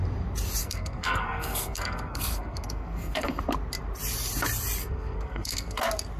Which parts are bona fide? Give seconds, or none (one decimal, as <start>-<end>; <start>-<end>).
0.0-0.6; 3.4-4.8; 5.8-6.2